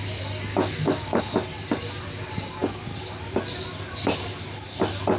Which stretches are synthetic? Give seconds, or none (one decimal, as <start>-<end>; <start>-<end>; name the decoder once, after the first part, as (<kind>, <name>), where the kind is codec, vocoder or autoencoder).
0.5-1.2 (codec, DAC)